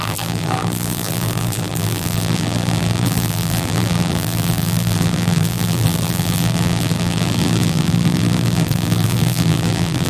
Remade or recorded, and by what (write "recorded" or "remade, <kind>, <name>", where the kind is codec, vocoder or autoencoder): remade, vocoder, BigVGAN v2